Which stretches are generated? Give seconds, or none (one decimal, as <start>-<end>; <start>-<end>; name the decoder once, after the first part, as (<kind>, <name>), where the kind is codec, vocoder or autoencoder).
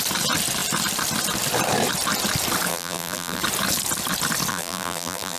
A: 2.7-3.4 (vocoder, BigVGAN v2); 4.5-5.4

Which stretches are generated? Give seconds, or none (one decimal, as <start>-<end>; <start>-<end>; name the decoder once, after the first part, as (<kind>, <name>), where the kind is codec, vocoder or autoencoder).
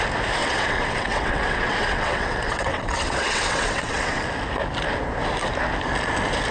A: 0.4-4.2 (vocoder, WaveNeXt)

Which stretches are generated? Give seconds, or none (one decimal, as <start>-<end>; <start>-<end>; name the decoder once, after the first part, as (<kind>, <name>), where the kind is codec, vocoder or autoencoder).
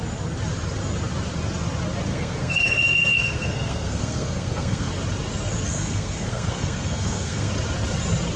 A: 2.1-4.9 (codec, SNAC); 5.7-7.5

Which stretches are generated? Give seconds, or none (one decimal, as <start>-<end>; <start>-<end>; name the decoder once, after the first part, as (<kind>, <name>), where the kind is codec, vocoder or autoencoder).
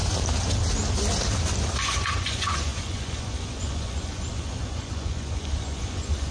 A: 1.8-6.3 (vocoder, Vocos)